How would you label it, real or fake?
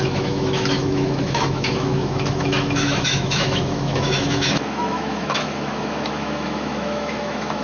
fake